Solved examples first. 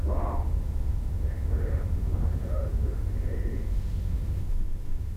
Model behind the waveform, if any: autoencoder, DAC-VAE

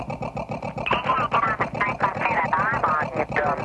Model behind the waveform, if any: none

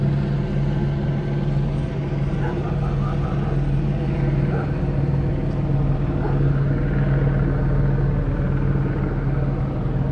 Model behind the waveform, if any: none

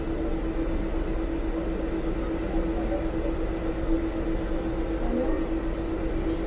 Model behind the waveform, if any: none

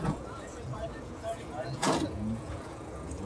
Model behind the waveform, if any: vocoder, Vocos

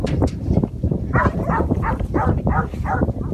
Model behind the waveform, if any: vocoder, BigVGAN v2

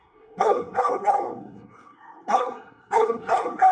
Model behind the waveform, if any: codec, SNAC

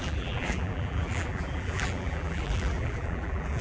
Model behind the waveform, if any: vocoder, BigVGAN v2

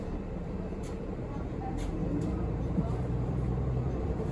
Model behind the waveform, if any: vocoder, BigVGAN v2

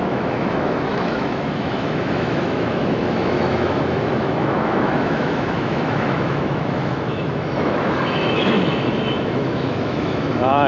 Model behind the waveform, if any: autoencoder, DAC-VAE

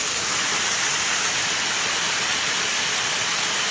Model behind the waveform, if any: none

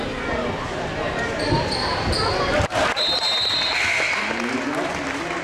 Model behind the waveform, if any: none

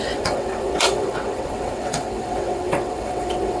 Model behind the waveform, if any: vocoder, WaveNeXt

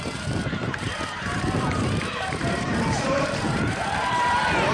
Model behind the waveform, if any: vocoder, BigVGAN v2